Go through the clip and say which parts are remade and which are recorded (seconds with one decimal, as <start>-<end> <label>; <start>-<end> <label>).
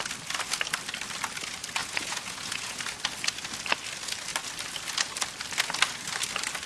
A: 0.0-1.8 recorded; 1.8-2.8 remade; 2.8-6.7 recorded